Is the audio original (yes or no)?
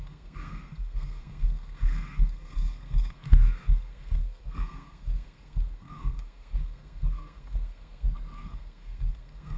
no